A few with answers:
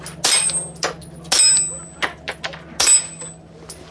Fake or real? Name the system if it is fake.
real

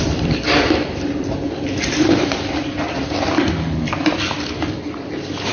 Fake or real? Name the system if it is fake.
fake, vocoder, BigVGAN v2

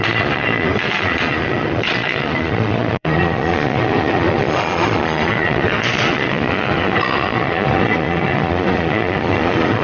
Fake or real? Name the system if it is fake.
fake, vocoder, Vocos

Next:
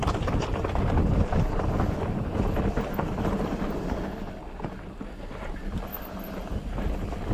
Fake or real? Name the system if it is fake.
real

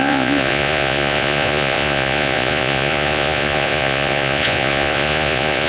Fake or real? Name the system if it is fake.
fake, vocoder, Vocos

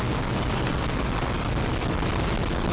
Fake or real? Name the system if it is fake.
real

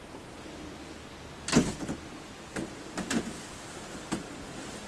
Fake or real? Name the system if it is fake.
real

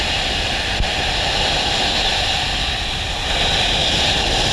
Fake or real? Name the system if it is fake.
real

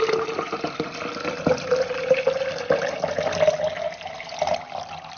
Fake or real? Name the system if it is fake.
real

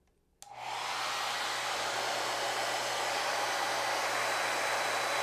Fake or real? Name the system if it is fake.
real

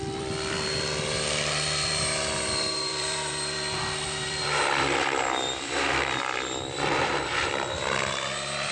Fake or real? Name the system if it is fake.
fake, vocoder, BigVGAN v2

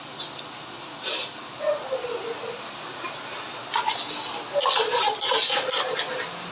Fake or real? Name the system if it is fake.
real